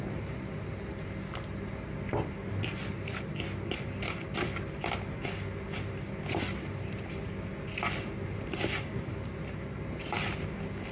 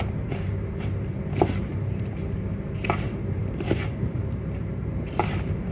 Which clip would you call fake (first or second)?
second